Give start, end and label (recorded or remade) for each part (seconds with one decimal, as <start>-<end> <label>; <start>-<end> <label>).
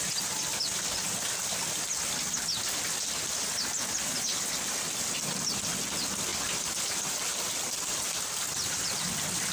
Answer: 0.0-9.5 recorded